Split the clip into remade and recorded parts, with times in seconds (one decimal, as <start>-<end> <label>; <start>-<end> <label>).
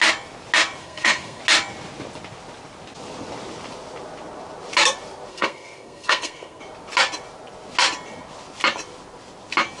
0.0-0.8 recorded; 0.8-1.4 remade; 1.4-5.3 recorded; 5.3-6.6 remade; 6.6-9.8 recorded